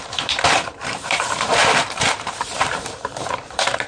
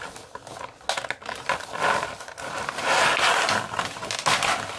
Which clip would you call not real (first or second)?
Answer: first